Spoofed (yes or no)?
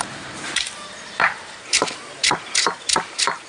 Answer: yes